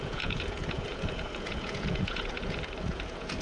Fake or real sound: fake